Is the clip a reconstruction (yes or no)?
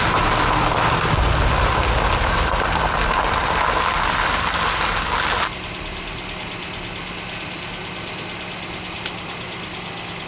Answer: no